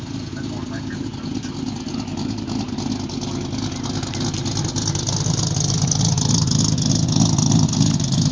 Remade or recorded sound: recorded